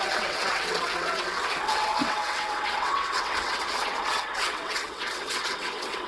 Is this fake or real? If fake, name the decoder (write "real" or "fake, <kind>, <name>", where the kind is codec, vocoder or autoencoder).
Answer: fake, vocoder, WaveNeXt